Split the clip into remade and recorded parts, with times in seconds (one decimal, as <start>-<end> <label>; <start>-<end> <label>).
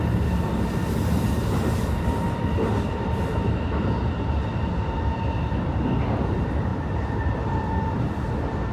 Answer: 0.0-8.7 recorded